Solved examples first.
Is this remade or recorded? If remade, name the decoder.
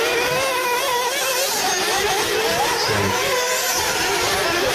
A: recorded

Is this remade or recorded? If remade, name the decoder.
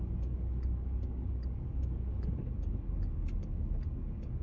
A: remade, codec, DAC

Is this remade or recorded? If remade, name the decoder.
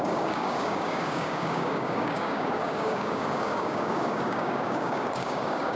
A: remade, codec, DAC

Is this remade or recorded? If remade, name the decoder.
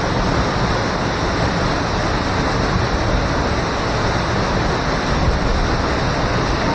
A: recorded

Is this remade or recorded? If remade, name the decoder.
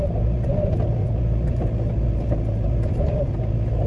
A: recorded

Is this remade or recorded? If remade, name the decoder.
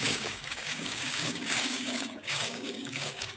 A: remade, codec, DAC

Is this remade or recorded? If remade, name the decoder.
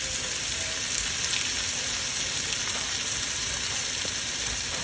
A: recorded